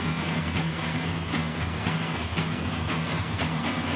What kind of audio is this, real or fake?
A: fake